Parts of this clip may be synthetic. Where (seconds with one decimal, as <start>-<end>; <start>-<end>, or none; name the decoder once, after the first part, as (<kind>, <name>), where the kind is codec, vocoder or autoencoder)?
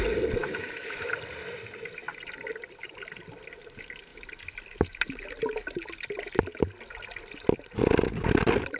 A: 0.4-1.1 (autoencoder, DAC-VAE)